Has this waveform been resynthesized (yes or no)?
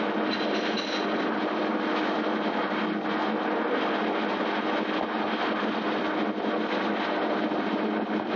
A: no